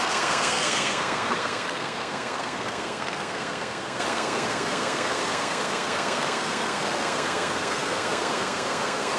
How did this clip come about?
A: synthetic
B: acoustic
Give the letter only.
A